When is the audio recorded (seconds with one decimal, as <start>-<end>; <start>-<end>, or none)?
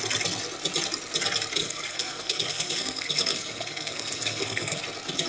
0.0-1.6; 4.8-5.3